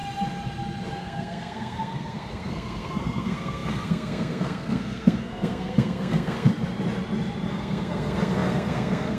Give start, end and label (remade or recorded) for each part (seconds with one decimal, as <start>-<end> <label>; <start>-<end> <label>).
0.0-0.9 recorded; 0.9-6.5 remade; 6.5-7.5 recorded; 7.5-9.2 remade